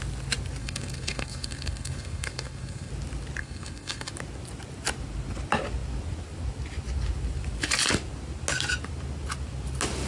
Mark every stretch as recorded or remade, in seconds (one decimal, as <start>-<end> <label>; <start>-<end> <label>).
0.0-0.6 recorded; 0.6-2.9 remade; 2.9-3.4 recorded; 3.4-4.1 remade; 4.1-10.1 recorded